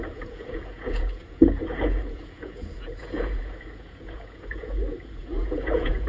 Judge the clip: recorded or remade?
remade